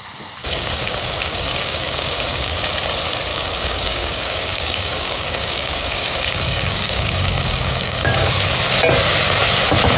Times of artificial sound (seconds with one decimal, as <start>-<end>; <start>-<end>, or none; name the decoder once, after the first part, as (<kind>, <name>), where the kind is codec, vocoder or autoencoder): 0.4-2.7 (codec, DAC); 3.3-8.3

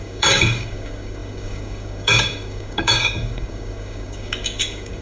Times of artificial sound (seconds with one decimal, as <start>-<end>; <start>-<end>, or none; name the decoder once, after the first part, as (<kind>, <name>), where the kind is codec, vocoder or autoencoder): 0.0-5.0 (codec, DAC)